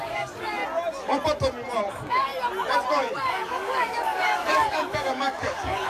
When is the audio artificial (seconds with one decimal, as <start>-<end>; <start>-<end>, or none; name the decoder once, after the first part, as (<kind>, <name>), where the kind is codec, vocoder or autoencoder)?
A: 0.0-0.6 (codec, DAC); 1.9-2.3; 2.9-5.9